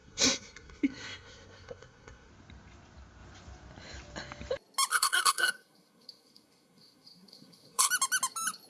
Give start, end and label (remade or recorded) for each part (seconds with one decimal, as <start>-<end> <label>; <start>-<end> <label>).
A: 0.0-2.3 remade; 2.3-4.9 recorded; 4.9-7.9 remade; 7.9-8.7 recorded